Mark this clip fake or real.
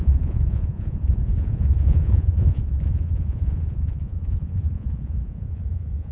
fake